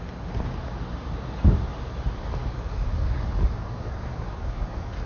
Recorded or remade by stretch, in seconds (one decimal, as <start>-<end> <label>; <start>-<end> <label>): 0.0-2.4 recorded; 2.4-5.1 remade